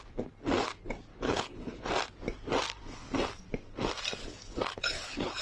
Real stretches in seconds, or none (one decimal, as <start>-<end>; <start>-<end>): 0.0-1.1; 1.9-4.2